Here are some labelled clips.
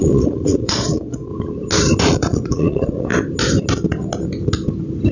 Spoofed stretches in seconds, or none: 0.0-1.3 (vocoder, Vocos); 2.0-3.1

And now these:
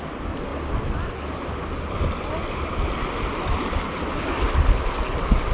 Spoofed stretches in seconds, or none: none